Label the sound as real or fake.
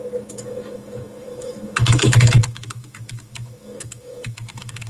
fake